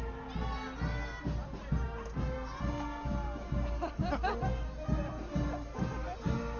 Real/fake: real